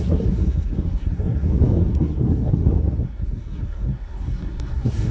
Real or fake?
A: fake